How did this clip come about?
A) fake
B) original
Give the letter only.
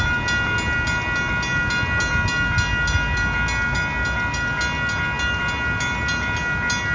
B